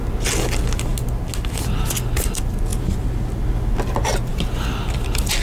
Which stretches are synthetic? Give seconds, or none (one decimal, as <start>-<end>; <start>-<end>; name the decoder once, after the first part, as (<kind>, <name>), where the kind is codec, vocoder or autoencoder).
none